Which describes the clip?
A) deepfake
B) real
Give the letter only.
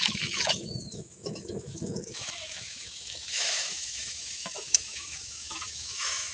A